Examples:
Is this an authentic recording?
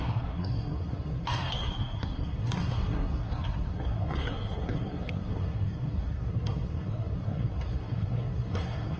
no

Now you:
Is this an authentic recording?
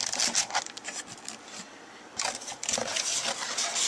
yes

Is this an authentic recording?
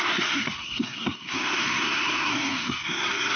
no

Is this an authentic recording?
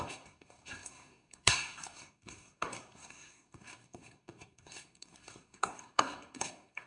no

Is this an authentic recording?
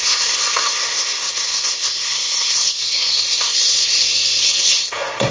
no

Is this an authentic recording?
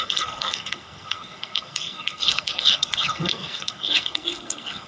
no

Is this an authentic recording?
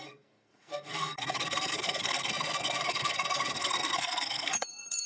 no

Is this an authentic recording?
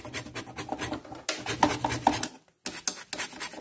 yes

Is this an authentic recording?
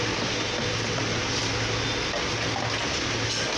yes